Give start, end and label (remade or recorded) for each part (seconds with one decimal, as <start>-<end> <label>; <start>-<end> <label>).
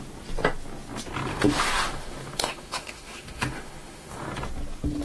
0.0-1.3 recorded; 1.3-4.3 remade; 4.3-5.0 recorded